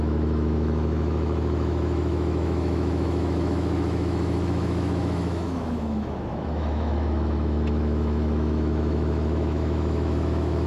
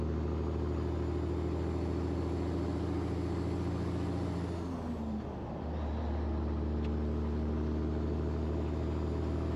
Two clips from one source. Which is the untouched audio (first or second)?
second